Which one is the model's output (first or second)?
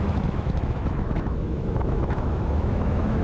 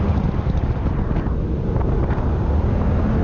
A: first